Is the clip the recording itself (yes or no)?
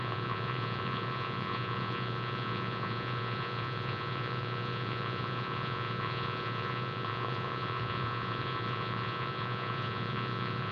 no